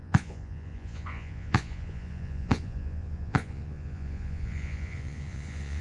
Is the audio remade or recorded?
remade